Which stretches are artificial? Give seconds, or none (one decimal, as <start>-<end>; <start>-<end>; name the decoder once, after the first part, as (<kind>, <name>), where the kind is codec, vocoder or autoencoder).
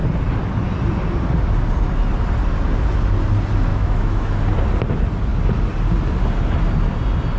3.7-4.4 (autoencoder, DAC-VAE)